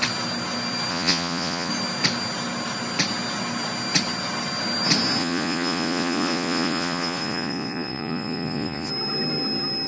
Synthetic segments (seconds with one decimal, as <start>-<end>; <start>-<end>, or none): 0.9-1.7; 5.2-8.9